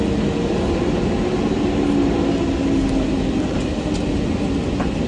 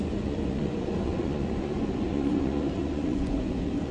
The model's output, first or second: second